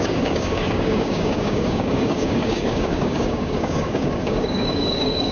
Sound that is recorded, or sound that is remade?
remade